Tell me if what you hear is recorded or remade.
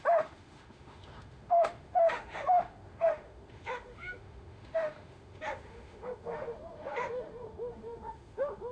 remade